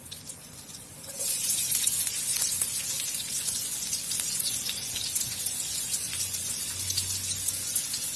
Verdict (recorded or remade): remade